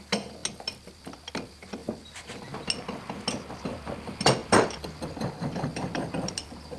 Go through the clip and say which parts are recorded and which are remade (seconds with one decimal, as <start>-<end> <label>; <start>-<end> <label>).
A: 0.0-1.8 recorded; 1.8-2.4 remade; 2.4-4.4 recorded; 4.4-5.0 remade; 5.0-5.7 recorded; 5.7-6.8 remade